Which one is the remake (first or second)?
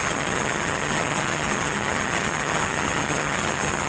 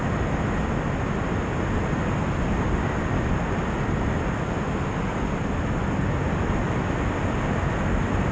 first